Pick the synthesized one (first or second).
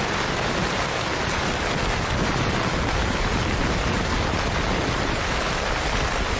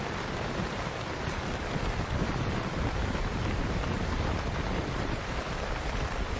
second